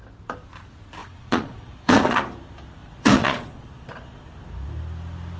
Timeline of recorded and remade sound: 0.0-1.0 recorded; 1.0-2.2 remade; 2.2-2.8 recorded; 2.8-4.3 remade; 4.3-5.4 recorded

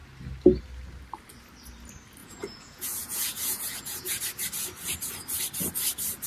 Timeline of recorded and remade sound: 0.0-2.2 recorded; 2.2-4.2 remade; 4.2-6.3 recorded

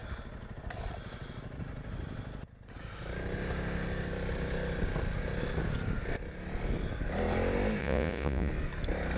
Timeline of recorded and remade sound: 0.0-7.8 recorded; 7.8-8.5 remade; 8.5-9.2 recorded

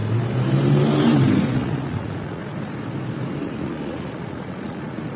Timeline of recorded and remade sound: 0.0-1.5 recorded; 1.5-2.4 remade; 2.4-3.4 recorded; 3.4-5.2 remade

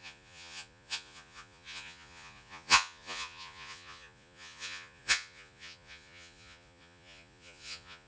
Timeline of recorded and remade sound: 0.0-8.1 remade